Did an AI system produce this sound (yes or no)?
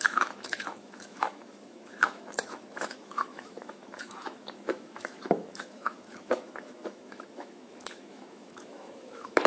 yes